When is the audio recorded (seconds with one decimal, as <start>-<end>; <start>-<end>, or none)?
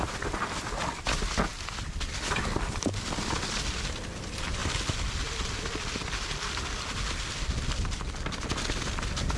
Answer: 0.0-9.4